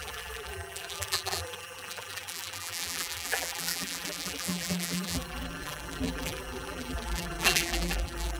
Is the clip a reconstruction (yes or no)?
yes